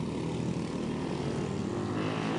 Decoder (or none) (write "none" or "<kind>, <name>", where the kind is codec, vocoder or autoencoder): none